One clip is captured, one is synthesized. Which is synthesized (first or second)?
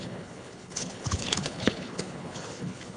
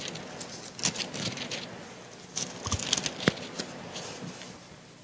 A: first